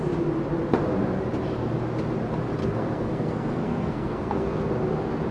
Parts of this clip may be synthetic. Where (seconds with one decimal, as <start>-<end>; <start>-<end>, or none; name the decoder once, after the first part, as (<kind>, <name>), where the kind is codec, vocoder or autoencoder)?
2.6-4.7 (codec, SNAC)